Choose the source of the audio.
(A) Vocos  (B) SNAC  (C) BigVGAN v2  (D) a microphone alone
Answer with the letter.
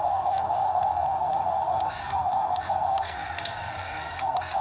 B